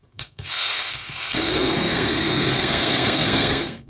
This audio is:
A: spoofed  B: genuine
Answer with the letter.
A